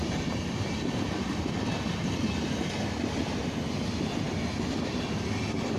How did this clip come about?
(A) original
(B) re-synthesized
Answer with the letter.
A